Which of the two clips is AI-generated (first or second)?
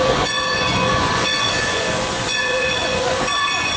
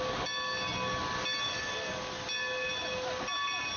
first